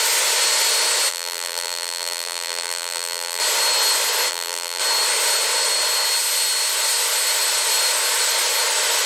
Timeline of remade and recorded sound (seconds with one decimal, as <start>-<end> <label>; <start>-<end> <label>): 0.0-1.1 recorded; 1.1-3.4 remade; 3.4-4.3 recorded; 4.3-4.8 remade; 4.8-9.1 recorded